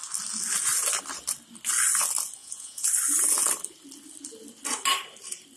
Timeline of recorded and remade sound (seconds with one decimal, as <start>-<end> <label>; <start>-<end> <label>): 0.0-2.4 recorded; 2.4-2.9 remade; 2.9-5.6 recorded